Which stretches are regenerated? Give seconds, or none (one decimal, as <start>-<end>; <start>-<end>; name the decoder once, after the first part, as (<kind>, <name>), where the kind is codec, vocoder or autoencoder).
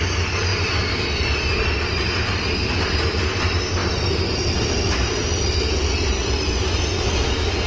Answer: 0.5-1.6 (vocoder, BigVGAN v2)